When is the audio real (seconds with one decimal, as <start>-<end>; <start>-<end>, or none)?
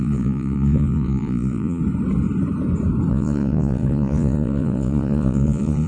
1.8-3.1